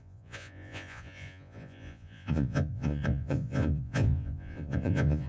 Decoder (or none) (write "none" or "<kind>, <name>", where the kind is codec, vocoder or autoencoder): vocoder, Vocos